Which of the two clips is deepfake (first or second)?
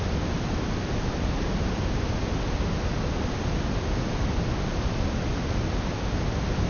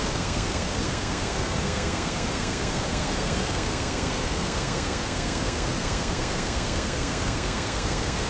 second